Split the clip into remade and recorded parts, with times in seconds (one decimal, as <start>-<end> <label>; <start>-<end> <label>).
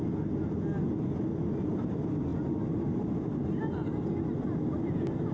0.0-5.3 recorded